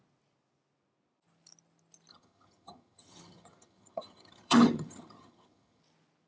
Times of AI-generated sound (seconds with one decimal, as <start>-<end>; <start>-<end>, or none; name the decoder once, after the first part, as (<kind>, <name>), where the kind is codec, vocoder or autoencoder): 2.1-5.8 (vocoder, HiFi-GAN)